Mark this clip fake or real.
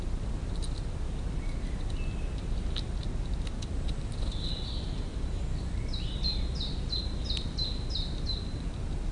real